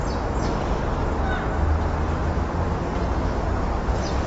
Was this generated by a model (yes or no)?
no